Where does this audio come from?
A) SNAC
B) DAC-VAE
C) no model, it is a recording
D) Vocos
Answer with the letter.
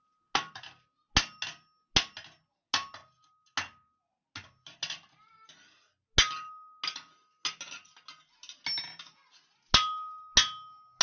C